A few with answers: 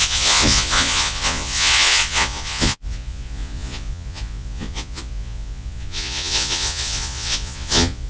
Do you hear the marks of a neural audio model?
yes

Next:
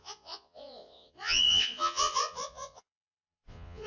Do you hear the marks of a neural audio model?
yes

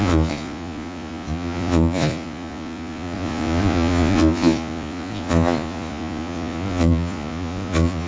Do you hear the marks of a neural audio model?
yes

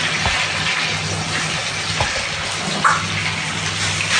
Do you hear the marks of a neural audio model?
no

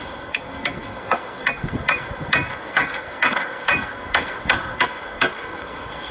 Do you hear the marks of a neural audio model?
yes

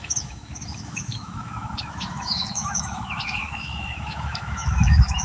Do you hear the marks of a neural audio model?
yes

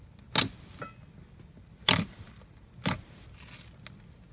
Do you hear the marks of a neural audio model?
no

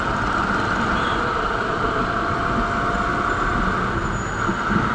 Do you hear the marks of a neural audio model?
no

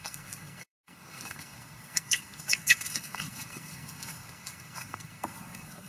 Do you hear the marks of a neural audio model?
yes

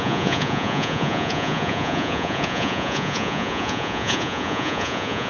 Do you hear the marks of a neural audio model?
yes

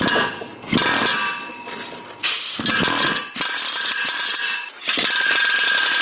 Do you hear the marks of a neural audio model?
no